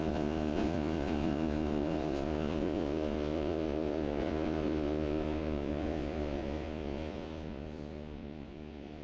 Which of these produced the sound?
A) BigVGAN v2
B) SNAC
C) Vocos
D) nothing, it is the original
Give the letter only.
C